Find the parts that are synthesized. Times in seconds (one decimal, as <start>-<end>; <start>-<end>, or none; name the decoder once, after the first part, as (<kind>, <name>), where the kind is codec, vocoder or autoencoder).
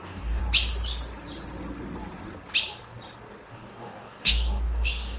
0.0-0.4 (codec, DAC); 3.5-5.2